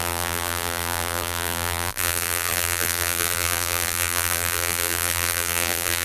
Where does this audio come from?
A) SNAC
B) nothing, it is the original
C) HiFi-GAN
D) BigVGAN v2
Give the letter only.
D